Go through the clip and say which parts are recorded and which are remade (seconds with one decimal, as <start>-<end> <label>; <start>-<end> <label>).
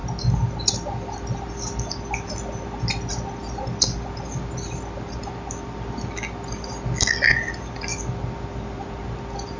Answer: 0.0-9.6 recorded